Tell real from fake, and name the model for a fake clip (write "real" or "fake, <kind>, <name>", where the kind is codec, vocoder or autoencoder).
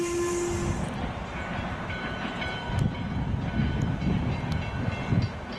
real